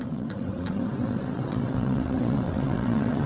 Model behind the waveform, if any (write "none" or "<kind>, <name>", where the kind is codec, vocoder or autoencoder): vocoder, WaveNeXt